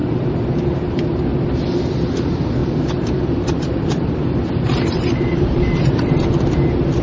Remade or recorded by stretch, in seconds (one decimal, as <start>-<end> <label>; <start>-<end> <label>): 0.0-1.2 remade; 1.2-2.6 recorded; 2.6-6.0 remade; 6.0-7.0 recorded

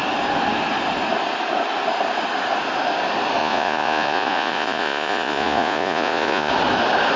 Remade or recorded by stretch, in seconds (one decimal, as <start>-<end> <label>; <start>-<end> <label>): 0.0-3.4 recorded; 3.4-6.5 remade; 6.5-7.2 recorded

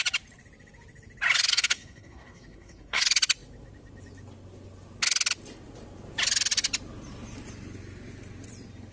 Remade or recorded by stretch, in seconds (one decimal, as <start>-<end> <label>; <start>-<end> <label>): 0.0-1.5 recorded; 1.5-3.0 remade; 3.0-8.9 recorded

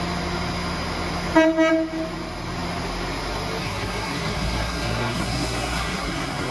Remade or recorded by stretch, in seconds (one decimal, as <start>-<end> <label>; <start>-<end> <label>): 0.0-3.6 recorded; 3.6-6.5 remade

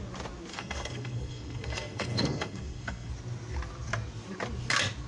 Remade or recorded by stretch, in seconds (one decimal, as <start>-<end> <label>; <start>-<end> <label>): 0.0-0.5 recorded; 0.5-3.1 remade; 3.1-5.1 recorded